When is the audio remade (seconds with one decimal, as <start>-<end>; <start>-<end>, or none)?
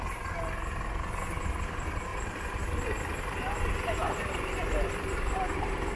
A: 2.1-6.0